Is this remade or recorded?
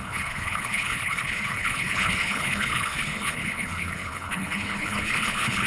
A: remade